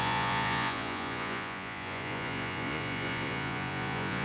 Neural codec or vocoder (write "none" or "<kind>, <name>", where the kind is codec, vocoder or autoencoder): vocoder, Vocos